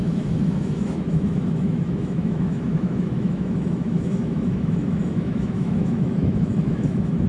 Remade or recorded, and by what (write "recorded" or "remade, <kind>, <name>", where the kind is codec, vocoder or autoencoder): remade, autoencoder, DAC-VAE